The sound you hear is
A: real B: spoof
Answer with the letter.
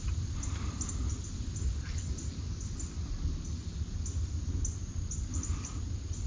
A